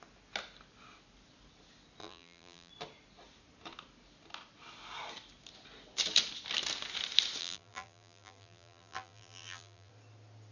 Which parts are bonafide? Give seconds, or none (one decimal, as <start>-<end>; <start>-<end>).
0.0-2.0; 2.7-7.4; 9.9-10.5